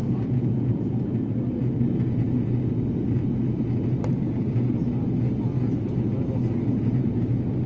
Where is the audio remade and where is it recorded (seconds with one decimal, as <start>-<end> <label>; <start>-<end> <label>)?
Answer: 0.0-1.0 remade; 1.0-7.7 recorded